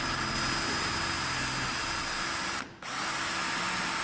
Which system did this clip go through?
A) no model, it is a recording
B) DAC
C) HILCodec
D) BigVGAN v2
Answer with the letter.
A